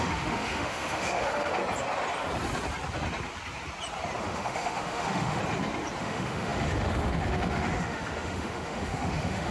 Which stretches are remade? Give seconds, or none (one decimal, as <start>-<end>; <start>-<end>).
0.0-1.6; 4.2-5.4; 6.0-9.5